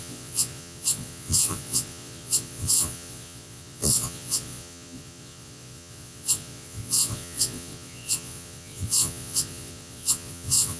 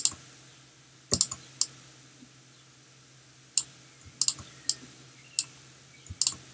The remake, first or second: first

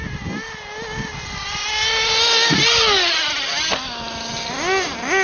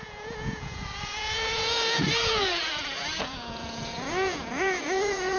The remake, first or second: second